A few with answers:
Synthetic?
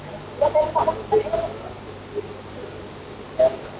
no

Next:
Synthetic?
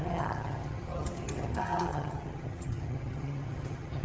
yes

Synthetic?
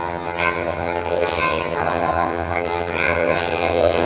yes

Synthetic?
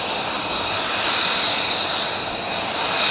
no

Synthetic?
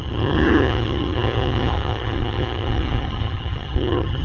yes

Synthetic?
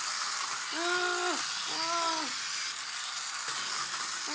no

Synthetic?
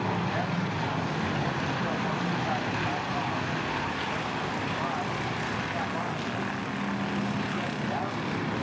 no